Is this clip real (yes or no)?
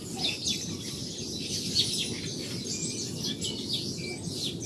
yes